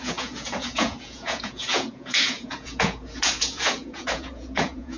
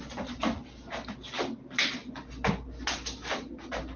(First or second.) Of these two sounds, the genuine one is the second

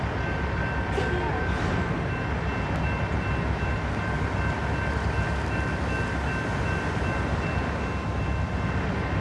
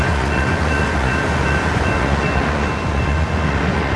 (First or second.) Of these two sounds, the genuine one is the first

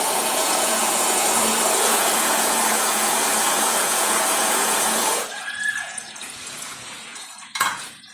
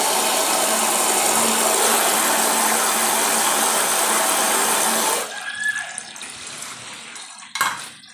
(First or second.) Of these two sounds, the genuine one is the second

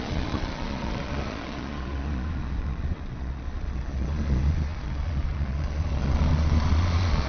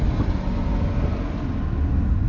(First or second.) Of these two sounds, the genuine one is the second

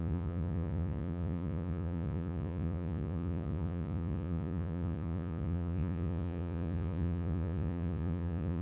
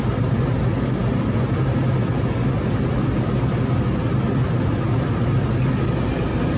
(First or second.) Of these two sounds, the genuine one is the second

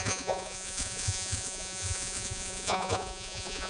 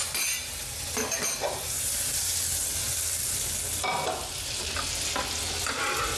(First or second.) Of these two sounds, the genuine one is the second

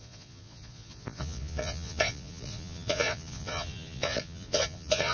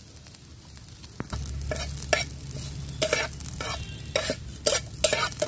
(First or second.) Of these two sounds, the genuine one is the second